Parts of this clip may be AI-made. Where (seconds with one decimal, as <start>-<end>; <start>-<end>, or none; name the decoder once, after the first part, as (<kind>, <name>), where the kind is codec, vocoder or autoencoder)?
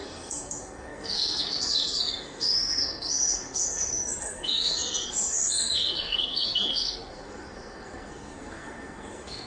0.0-9.5 (codec, SNAC)